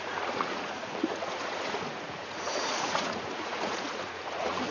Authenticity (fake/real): fake